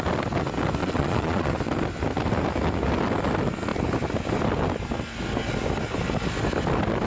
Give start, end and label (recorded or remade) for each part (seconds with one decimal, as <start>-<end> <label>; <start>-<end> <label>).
0.0-0.8 recorded; 0.8-1.5 remade; 1.5-7.1 recorded